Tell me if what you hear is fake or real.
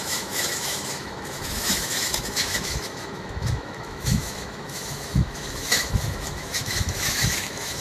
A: fake